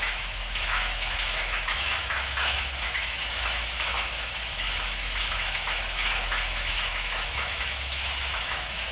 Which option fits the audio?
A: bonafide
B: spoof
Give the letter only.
B